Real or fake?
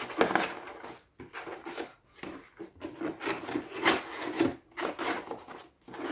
real